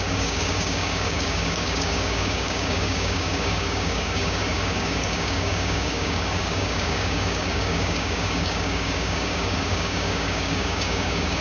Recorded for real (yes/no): no